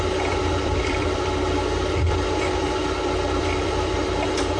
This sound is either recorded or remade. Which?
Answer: remade